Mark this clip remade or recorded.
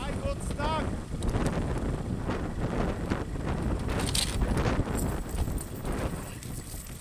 recorded